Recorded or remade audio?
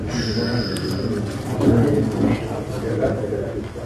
recorded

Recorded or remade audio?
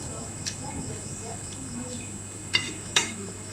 remade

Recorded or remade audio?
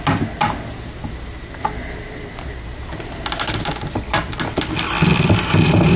recorded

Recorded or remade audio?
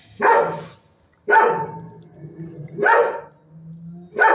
recorded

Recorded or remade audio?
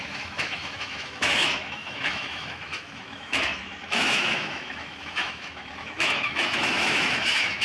remade